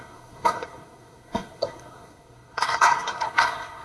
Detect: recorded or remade remade